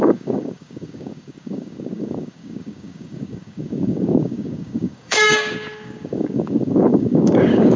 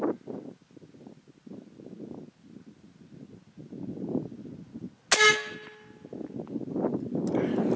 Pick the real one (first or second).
second